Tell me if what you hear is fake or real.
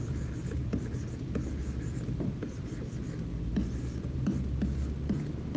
real